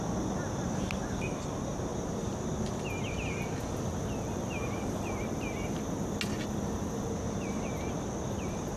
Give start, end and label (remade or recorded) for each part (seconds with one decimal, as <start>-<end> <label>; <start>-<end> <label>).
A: 0.0-8.8 recorded